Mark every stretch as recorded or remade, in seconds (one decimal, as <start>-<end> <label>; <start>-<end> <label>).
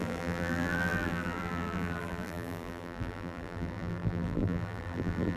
0.0-5.4 remade